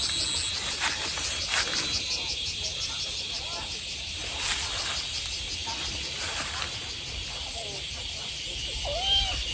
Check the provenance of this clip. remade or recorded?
recorded